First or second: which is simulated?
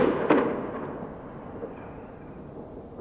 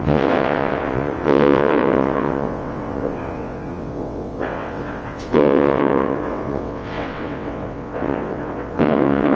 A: second